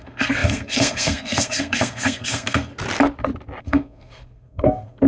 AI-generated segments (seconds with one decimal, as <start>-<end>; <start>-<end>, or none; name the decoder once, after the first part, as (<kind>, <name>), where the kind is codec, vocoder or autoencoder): 0.0-2.7 (codec, SNAC); 3.6-5.1